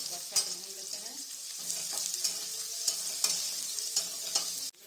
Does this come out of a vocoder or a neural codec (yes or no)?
no